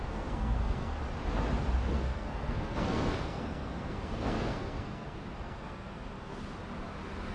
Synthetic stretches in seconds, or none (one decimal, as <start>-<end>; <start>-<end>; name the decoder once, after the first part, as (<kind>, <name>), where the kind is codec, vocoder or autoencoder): 0.0-1.0 (codec, SNAC); 1.9-6.3